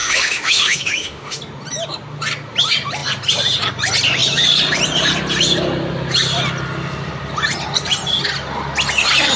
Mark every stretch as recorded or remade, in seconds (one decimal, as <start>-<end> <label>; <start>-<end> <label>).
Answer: 0.0-1.4 remade; 1.4-9.4 recorded